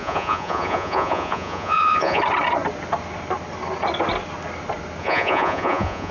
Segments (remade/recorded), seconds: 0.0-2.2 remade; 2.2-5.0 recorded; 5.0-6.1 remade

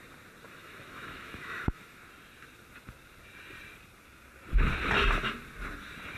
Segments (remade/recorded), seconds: 0.0-0.5 recorded; 0.5-2.0 remade; 2.0-6.2 recorded

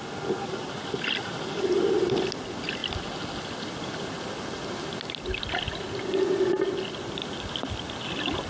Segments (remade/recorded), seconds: 0.0-8.5 recorded

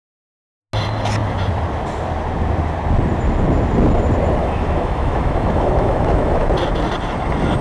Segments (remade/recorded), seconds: 0.0-4.4 recorded; 4.4-6.5 remade; 6.5-7.6 recorded